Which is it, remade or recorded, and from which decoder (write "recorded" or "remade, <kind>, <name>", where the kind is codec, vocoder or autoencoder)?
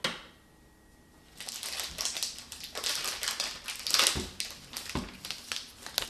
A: recorded